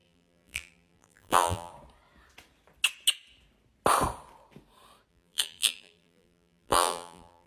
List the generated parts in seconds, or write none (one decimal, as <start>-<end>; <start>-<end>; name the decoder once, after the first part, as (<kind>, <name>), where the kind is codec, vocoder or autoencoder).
0.0-1.7 (vocoder, BigVGAN v2); 5.1-7.5